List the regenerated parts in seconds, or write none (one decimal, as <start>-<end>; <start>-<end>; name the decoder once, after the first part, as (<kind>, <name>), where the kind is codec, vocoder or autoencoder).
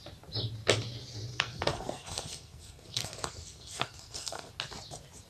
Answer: 1.3-4.5 (codec, SNAC)